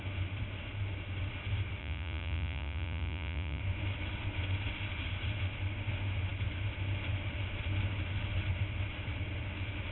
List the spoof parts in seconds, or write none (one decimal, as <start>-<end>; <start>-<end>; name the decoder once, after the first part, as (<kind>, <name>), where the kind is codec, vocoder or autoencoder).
1.8-3.6 (vocoder, Vocos)